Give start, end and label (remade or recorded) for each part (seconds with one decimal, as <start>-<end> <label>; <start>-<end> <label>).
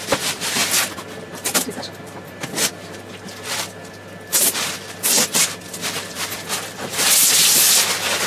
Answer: 0.0-8.3 recorded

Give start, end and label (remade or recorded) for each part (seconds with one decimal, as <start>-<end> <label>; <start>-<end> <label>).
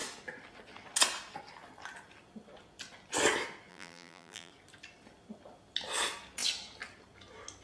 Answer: 0.0-3.7 recorded; 3.7-4.5 remade; 4.5-7.6 recorded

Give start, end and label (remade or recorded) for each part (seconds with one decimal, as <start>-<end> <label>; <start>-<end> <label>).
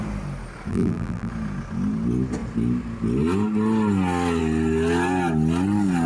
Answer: 0.0-0.7 recorded; 0.7-1.3 remade; 1.3-6.1 recorded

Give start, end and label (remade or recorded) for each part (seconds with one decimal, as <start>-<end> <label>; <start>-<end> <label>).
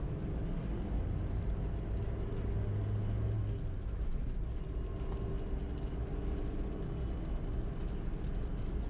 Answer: 0.0-8.9 recorded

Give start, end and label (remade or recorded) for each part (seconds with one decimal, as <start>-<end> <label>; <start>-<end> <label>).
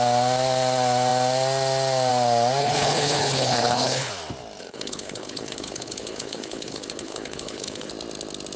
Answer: 0.0-2.6 recorded; 2.6-4.1 remade; 4.1-4.6 recorded; 4.6-7.9 remade; 7.9-8.6 recorded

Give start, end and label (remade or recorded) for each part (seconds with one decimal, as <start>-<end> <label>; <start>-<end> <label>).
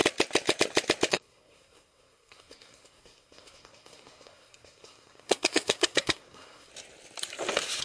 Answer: 0.0-1.1 recorded; 1.1-6.7 remade; 6.7-7.8 recorded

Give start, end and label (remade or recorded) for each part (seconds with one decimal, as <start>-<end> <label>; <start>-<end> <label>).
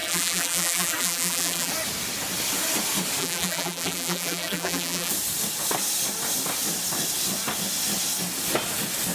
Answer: 0.0-1.7 remade; 1.7-3.2 recorded; 3.2-5.1 remade; 5.1-9.1 recorded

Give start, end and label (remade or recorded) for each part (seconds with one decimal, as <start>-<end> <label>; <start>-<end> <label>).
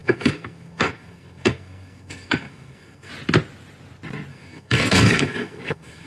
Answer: 0.0-3.1 remade; 3.1-4.3 recorded; 4.3-6.1 remade